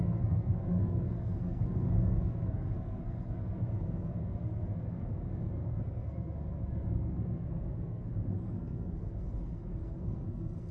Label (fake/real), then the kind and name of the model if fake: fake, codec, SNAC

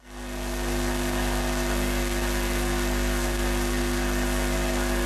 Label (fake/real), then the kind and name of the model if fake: fake, codec, SNAC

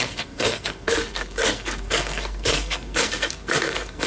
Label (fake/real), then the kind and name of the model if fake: fake, codec, SNAC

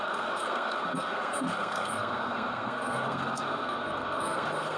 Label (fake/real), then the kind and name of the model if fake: fake, codec, SNAC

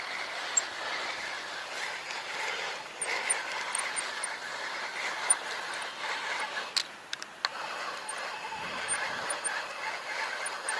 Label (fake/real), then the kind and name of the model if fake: real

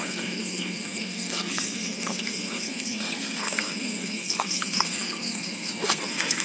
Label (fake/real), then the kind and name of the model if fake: fake, codec, SNAC